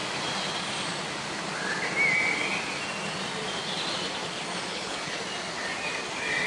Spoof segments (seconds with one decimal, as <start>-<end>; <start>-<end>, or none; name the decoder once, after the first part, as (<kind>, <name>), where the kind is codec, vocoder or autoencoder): 4.7-5.2 (codec, HILCodec)